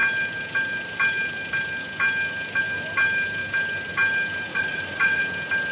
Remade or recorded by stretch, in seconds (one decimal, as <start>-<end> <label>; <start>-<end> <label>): 0.0-4.5 recorded; 4.5-5.2 remade; 5.2-5.7 recorded